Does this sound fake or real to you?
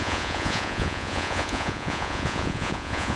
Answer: fake